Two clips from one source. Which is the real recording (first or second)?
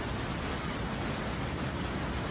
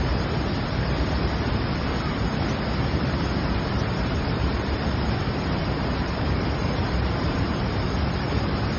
first